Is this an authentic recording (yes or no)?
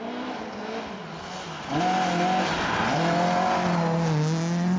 yes